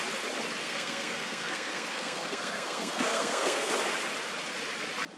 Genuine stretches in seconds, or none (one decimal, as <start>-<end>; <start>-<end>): 0.0-0.6; 3.7-5.2